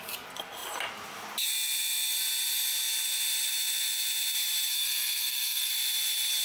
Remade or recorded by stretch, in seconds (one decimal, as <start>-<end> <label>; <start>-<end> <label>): 0.0-4.7 recorded; 4.7-5.7 remade; 5.7-6.4 recorded